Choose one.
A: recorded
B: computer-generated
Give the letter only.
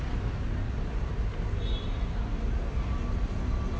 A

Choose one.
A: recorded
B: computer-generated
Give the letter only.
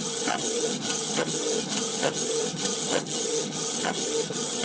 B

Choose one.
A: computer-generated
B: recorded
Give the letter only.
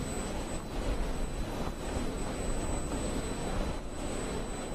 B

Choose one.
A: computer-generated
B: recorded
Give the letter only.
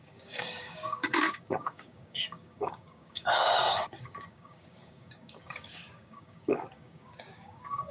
A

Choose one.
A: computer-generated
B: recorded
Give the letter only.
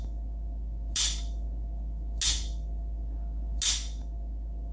B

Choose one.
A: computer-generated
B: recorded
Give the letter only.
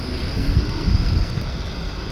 A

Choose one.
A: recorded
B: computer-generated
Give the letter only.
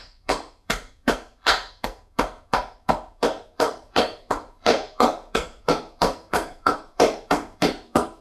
B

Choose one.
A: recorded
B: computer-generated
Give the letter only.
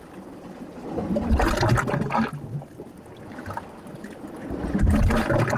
A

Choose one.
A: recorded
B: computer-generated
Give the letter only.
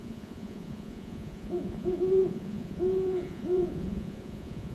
B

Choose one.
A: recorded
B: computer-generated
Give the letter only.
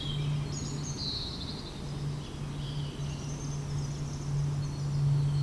A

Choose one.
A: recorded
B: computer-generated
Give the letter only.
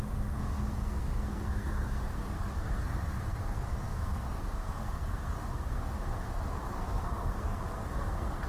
B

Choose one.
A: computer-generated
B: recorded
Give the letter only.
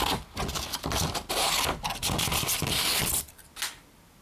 B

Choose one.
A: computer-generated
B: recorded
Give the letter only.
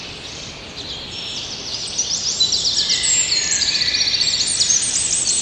A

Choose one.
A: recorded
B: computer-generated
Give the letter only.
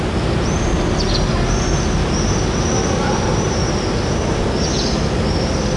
A